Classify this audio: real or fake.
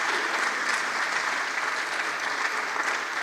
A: real